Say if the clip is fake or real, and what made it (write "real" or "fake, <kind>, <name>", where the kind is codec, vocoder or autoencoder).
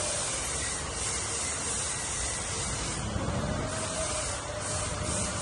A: fake, vocoder, BigVGAN v2